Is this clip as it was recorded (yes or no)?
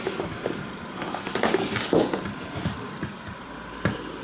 yes